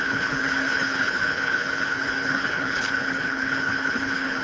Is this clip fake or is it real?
fake